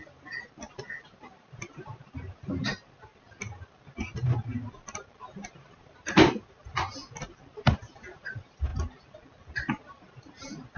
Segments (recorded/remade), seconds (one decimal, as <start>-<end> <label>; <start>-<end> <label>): 0.0-3.1 remade; 3.1-5.5 recorded; 5.5-6.6 remade; 6.6-7.5 recorded; 7.5-8.7 remade; 8.7-9.8 recorded; 9.8-10.8 remade